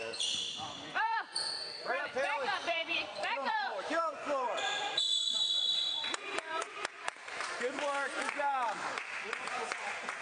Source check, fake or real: fake